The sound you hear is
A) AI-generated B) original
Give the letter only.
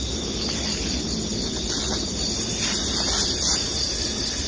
B